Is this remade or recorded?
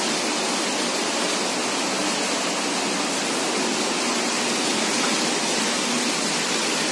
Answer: recorded